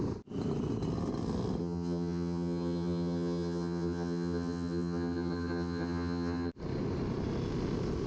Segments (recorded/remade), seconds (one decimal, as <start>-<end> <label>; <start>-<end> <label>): 0.0-1.6 recorded; 1.6-6.5 remade; 6.5-8.1 recorded